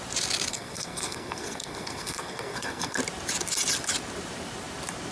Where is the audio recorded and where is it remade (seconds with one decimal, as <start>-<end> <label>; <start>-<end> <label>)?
0.0-0.5 recorded; 0.5-3.0 remade; 3.0-5.1 recorded